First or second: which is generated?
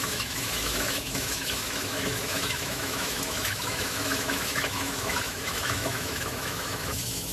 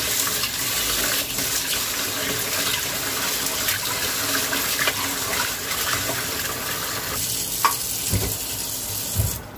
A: first